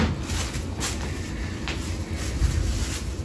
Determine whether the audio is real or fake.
real